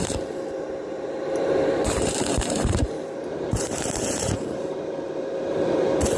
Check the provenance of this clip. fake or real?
fake